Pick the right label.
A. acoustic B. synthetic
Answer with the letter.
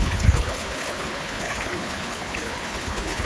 B